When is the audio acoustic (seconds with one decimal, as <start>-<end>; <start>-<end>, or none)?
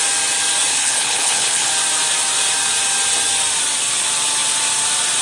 0.0-0.7; 1.7-5.2